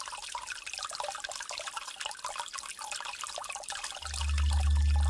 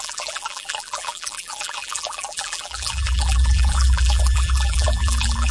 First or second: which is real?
first